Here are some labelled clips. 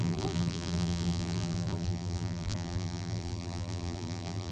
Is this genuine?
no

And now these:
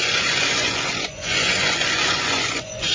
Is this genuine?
no